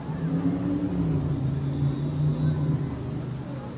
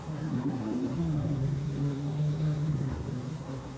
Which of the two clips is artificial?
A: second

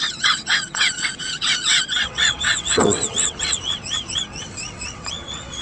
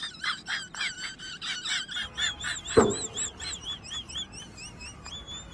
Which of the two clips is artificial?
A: first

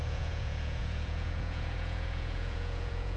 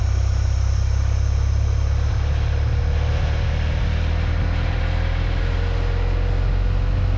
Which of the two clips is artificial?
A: first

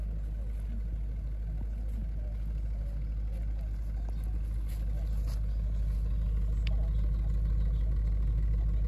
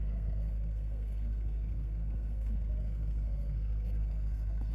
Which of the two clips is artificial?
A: second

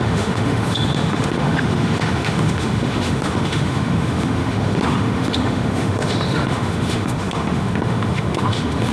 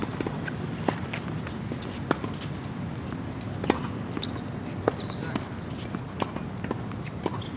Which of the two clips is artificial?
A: first